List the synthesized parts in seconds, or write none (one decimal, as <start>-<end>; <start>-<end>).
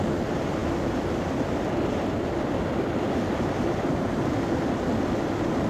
none